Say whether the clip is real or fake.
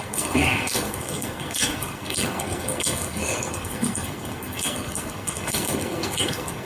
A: fake